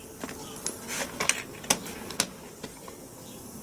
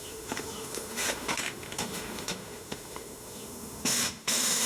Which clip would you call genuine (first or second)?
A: first